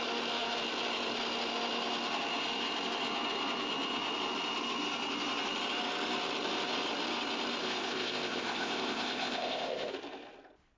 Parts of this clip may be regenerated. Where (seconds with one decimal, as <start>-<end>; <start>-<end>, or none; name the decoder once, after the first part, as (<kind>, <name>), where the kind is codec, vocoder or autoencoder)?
7.6-9.9 (codec, ZipCodec)